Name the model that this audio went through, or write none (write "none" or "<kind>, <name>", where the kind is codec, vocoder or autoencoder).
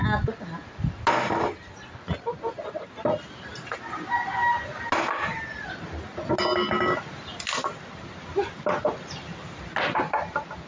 none